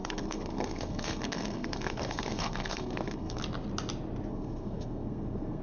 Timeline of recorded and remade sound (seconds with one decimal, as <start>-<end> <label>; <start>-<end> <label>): 0.0-3.4 remade; 3.4-4.3 recorded; 4.3-5.6 remade